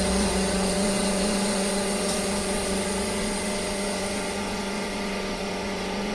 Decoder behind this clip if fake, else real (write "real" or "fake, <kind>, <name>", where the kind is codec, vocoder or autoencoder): fake, vocoder, Vocos